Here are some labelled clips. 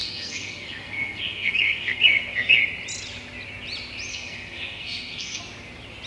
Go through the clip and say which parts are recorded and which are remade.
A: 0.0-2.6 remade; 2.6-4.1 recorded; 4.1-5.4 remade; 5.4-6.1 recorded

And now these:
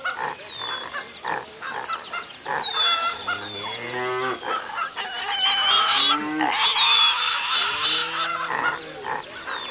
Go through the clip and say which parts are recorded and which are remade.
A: 0.0-9.7 recorded

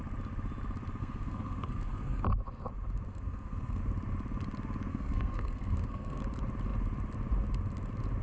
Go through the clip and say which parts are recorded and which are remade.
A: 0.0-1.0 recorded; 1.0-2.2 remade; 2.2-3.1 recorded; 3.1-3.8 remade; 3.8-4.9 recorded; 4.9-6.2 remade; 6.2-8.2 recorded

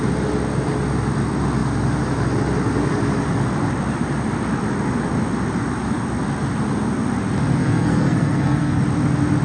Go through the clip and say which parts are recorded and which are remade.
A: 0.0-7.6 recorded; 7.6-8.8 remade; 8.8-9.4 recorded

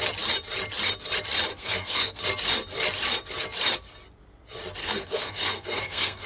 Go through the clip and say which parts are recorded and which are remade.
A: 0.0-1.5 recorded; 1.5-2.2 remade; 2.2-4.8 recorded; 4.8-6.3 remade